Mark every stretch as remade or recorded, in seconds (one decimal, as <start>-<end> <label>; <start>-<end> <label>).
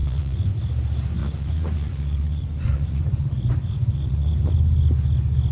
0.0-0.5 remade; 0.5-1.2 recorded; 1.2-4.5 remade; 4.5-5.5 recorded